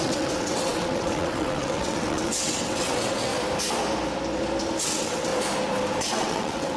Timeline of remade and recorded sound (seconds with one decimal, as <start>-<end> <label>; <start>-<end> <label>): 0.0-3.3 remade; 3.3-4.8 recorded; 4.8-5.3 remade; 5.3-6.0 recorded; 6.0-6.8 remade